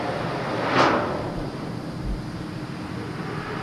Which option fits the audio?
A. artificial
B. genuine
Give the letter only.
B